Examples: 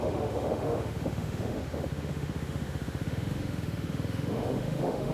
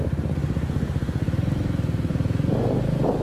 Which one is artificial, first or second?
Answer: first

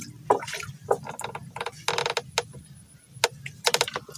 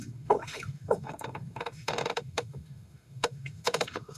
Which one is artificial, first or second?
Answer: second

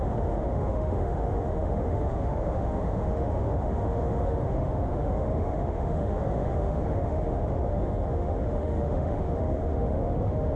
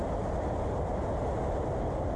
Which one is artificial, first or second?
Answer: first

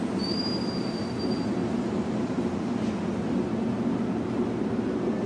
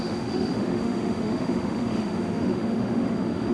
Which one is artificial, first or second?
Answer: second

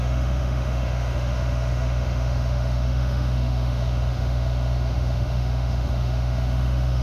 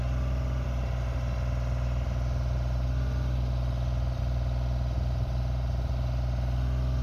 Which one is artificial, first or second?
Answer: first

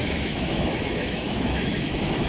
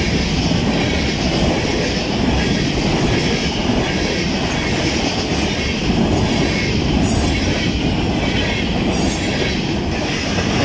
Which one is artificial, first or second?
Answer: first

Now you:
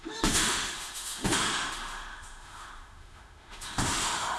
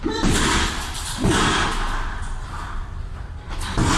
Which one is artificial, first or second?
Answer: first